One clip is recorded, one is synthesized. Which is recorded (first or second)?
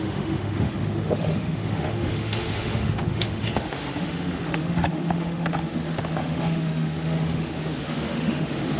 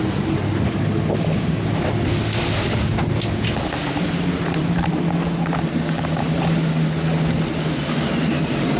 second